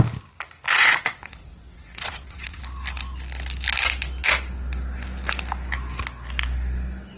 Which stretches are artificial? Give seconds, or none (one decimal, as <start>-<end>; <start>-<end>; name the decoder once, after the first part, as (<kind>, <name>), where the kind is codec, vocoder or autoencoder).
0.7-2.6 (vocoder, WaveNeXt)